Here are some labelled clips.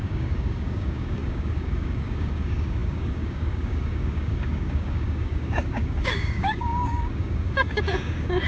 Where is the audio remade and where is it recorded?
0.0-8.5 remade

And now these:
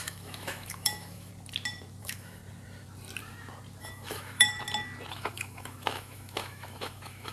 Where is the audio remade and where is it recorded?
0.0-1.3 remade; 1.3-2.0 recorded; 2.0-2.4 remade; 2.4-3.8 recorded; 3.8-4.5 remade; 4.5-5.1 recorded; 5.1-7.3 remade